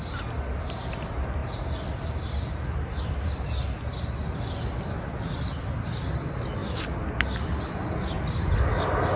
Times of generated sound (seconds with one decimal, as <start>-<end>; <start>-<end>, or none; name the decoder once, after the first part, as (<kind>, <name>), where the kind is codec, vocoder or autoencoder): none